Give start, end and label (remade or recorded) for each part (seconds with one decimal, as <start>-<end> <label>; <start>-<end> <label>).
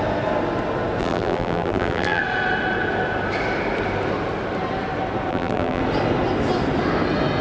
0.0-1.0 recorded; 1.0-2.2 remade; 2.2-5.3 recorded; 5.3-5.8 remade; 5.8-7.4 recorded